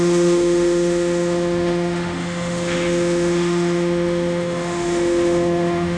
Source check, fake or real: fake